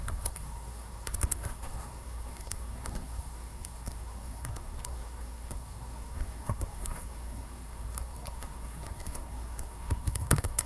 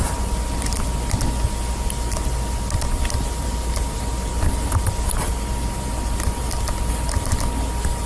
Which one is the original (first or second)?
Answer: second